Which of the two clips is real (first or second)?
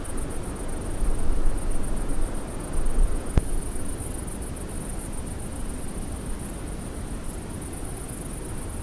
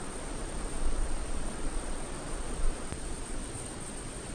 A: first